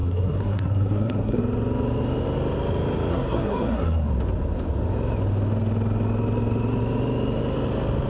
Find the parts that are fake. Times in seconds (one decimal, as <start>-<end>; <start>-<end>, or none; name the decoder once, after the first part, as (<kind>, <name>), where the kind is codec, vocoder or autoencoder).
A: 0.0-1.4 (codec, SNAC); 3.1-4.1